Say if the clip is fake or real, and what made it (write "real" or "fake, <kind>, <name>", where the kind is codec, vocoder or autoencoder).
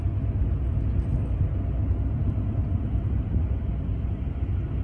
real